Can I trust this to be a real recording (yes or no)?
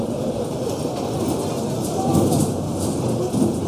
yes